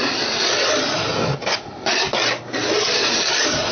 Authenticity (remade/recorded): recorded